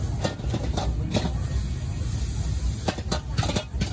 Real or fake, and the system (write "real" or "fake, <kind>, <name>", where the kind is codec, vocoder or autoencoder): real